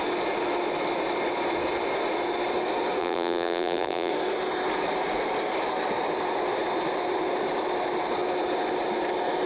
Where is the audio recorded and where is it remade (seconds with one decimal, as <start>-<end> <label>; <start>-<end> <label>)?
0.0-3.0 recorded; 3.0-4.1 remade; 4.1-9.5 recorded